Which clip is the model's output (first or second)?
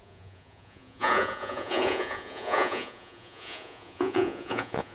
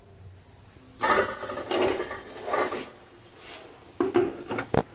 first